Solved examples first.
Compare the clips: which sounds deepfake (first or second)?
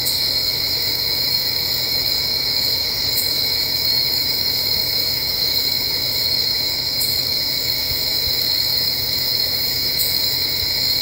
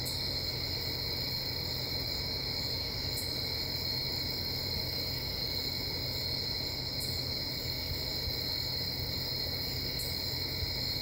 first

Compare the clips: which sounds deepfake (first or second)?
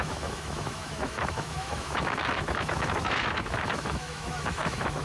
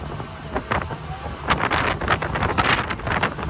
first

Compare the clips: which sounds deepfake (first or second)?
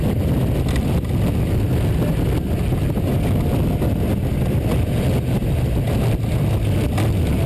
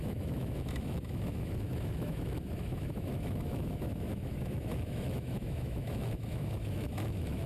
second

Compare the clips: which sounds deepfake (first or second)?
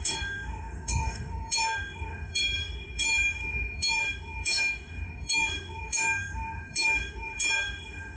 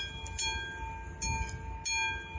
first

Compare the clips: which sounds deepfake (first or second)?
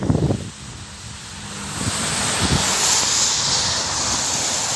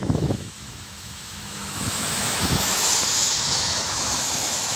second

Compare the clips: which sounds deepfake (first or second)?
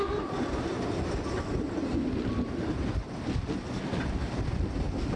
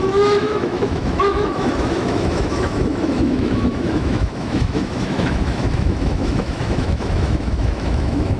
second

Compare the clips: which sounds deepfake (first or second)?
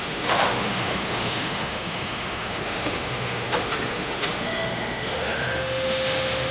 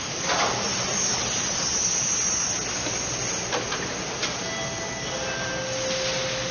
first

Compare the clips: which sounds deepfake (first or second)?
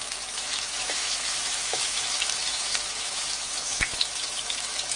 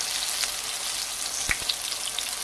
first